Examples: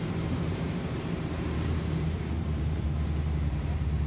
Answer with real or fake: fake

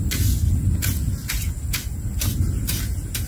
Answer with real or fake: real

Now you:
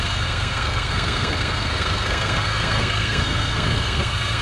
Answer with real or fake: fake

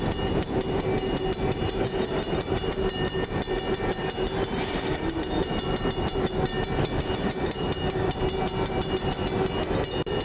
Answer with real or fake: real